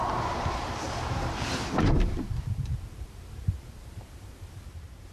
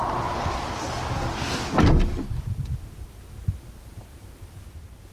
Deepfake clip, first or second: first